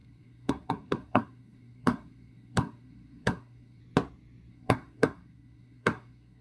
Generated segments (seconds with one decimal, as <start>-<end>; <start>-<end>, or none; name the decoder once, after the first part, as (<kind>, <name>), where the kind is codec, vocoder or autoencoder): 0.0-3.8 (codec, SNAC); 4.5-6.4